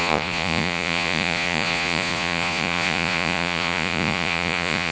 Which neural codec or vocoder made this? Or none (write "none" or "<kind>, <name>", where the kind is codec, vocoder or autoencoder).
vocoder, Vocos